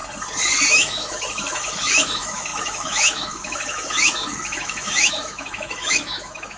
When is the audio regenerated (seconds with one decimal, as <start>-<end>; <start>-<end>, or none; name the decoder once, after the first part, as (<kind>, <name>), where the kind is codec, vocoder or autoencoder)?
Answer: 0.7-6.6 (autoencoder, DAC-VAE)